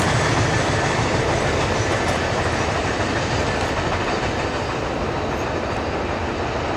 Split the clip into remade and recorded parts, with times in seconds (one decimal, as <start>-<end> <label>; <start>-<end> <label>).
0.0-2.8 recorded; 2.8-3.4 remade; 3.4-6.8 recorded

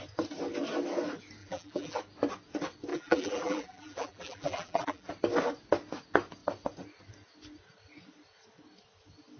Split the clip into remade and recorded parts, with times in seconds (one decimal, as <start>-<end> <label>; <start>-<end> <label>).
0.0-1.4 recorded; 1.4-2.0 remade; 2.0-2.9 recorded; 2.9-5.1 remade; 5.1-9.4 recorded